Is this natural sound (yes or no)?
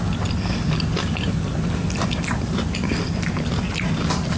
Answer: no